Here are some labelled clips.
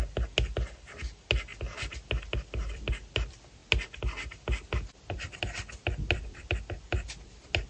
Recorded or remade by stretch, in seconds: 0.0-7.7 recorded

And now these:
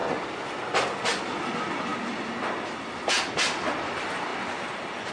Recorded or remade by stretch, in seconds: 0.0-5.1 recorded